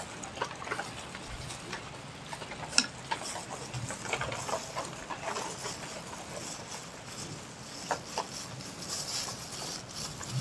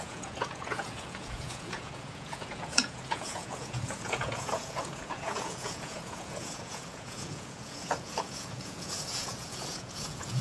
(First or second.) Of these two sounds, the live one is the first